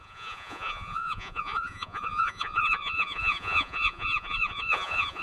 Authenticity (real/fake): fake